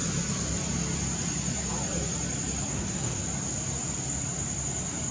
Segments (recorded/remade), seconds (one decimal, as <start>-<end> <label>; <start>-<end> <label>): 0.0-2.7 recorded; 2.7-3.2 remade; 3.2-5.1 recorded